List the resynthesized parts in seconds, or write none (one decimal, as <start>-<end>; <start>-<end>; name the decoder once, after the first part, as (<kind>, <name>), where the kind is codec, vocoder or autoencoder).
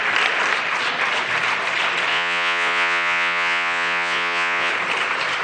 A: 2.1-4.7 (vocoder, Vocos)